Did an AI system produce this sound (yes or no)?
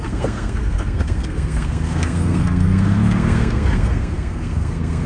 yes